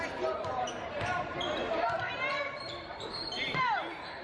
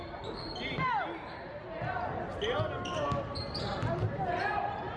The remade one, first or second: first